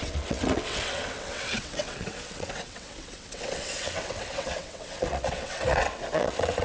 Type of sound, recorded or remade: remade